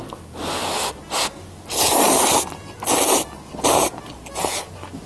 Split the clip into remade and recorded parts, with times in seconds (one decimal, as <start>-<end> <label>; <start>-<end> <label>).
0.0-5.1 recorded